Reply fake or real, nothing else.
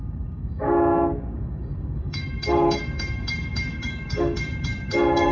fake